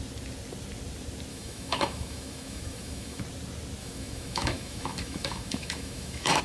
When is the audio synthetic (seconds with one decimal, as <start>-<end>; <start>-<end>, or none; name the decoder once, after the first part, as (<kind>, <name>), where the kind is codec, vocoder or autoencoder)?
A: 1.3-3.2 (autoencoder, DAC-VAE); 3.8-6.4